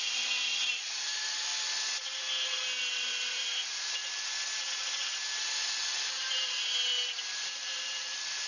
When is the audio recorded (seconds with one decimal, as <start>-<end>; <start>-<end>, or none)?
1.5-2.8; 4.0-6.1